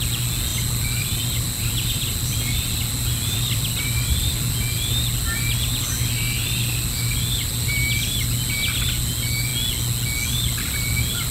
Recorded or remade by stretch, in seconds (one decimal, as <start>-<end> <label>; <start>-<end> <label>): 0.0-0.5 recorded; 0.5-5.4 remade; 5.4-11.3 recorded